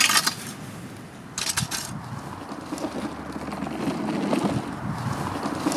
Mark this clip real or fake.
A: real